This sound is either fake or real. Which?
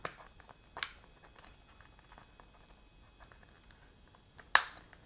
real